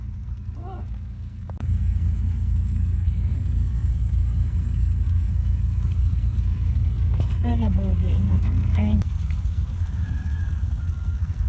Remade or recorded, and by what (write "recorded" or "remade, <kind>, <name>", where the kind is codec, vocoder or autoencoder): remade, codec, SNAC